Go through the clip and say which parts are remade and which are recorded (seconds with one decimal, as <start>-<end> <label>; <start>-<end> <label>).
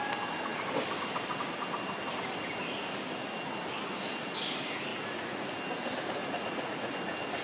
0.0-4.9 recorded; 4.9-5.5 remade; 5.5-6.2 recorded; 6.2-6.9 remade; 6.9-7.4 recorded